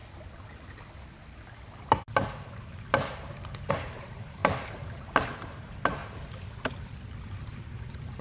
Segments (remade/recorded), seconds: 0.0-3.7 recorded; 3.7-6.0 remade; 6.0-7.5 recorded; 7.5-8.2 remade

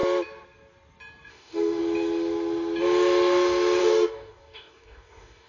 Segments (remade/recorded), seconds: 0.0-1.3 recorded; 1.3-1.8 remade; 1.8-3.8 recorded; 3.8-5.5 remade

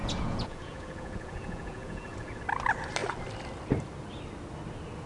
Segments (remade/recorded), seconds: 0.0-2.4 remade; 2.4-5.1 recorded